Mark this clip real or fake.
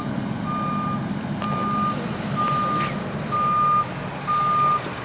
real